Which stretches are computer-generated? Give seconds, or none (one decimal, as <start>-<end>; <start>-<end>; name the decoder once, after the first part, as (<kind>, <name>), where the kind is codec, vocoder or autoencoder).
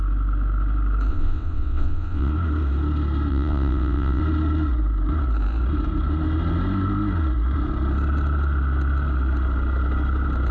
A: 1.1-2.3 (vocoder, WaveNeXt); 3.3-4.2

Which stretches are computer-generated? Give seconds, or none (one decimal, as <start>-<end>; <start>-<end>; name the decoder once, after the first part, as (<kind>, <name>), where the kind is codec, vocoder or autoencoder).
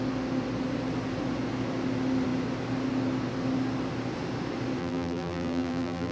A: 4.8-6.1 (vocoder, BigVGAN v2)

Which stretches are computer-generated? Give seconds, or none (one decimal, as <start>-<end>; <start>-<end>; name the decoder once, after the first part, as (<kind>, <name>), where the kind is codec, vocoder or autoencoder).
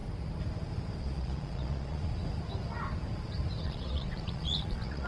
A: 1.0-2.1 (vocoder, Vocos); 3.6-5.1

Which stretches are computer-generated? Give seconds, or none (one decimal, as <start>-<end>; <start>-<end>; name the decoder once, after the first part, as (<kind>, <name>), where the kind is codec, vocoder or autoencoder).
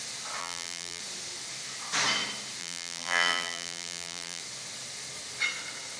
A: 0.4-1.0 (vocoder, BigVGAN v2); 2.6-4.4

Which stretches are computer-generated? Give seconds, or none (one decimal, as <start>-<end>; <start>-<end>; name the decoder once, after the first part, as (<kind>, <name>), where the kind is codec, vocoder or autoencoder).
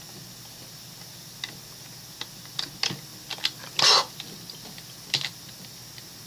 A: none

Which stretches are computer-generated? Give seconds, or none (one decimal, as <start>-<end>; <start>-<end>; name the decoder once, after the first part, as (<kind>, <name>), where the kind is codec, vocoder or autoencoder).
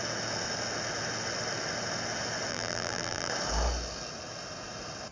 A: 2.5-3.3 (vocoder, BigVGAN v2)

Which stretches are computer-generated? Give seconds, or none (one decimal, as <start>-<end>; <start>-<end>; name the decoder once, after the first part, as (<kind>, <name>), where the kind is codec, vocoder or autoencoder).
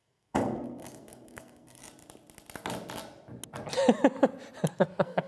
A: 0.0-1.8 (codec, SNAC); 4.7-5.3